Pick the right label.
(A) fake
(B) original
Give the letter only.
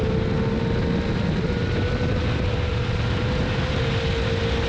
B